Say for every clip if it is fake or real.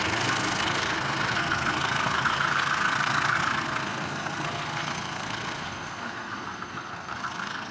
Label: fake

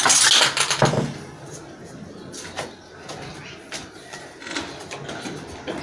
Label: real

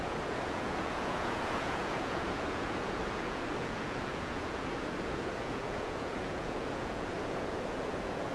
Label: fake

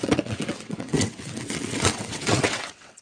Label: fake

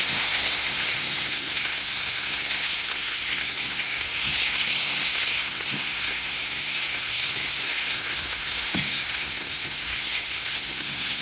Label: fake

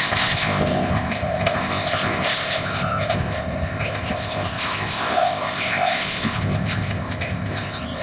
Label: fake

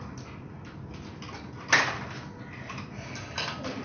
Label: real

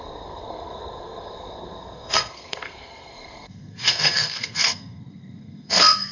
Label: fake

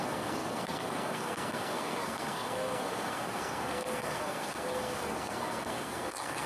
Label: fake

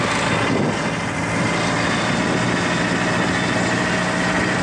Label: real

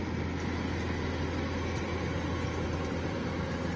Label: real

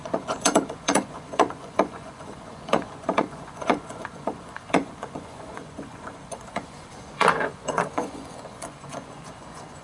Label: fake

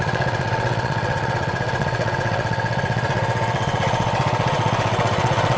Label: fake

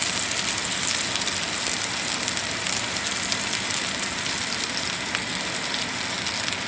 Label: real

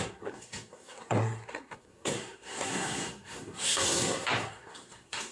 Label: fake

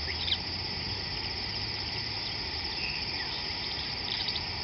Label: fake